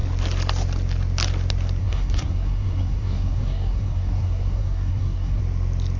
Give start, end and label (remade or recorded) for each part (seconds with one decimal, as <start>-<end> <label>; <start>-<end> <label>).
0.0-1.8 recorded; 1.8-5.4 remade; 5.4-6.0 recorded